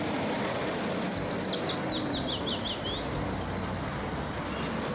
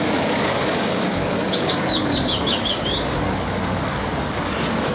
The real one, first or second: first